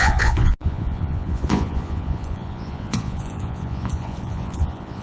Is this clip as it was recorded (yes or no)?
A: no